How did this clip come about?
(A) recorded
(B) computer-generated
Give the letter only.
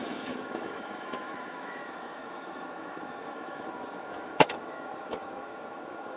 B